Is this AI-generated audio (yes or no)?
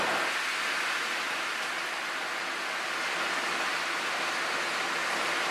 no